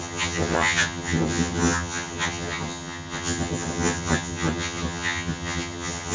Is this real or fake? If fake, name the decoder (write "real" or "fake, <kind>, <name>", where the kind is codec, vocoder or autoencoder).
fake, vocoder, HiFi-GAN